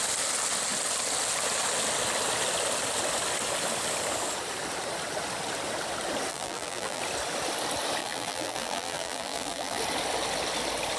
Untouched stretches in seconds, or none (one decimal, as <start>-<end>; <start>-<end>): 0.0-6.3; 7.0-8.0; 9.8-11.0